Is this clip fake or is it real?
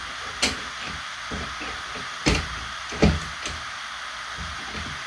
real